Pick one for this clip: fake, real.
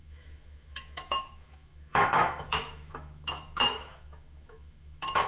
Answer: fake